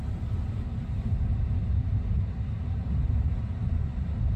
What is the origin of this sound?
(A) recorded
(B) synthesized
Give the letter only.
A